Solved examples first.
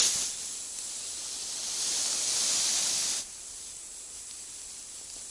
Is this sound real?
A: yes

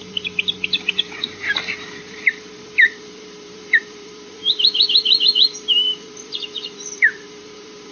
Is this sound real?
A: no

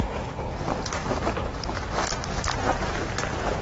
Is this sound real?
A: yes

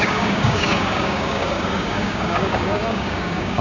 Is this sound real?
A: no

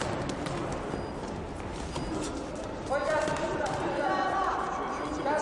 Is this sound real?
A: yes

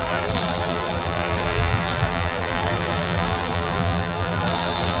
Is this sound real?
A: no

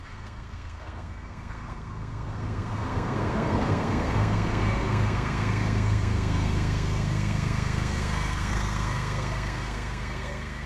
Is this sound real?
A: no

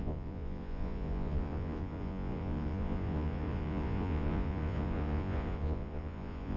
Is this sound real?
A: no